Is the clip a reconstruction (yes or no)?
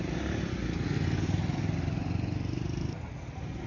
no